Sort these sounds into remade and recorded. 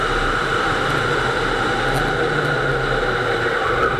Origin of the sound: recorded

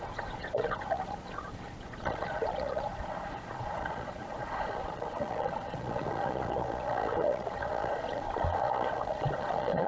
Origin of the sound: remade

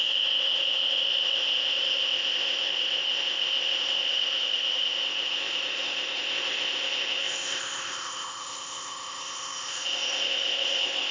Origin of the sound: remade